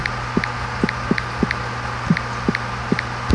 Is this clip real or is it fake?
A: real